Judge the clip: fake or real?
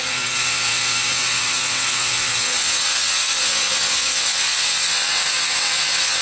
fake